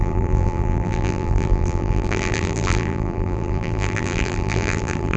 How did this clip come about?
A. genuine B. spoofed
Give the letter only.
B